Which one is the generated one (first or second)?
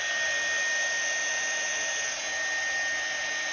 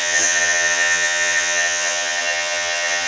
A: second